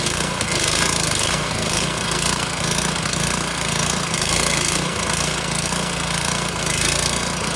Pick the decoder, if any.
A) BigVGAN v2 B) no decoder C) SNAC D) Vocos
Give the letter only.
C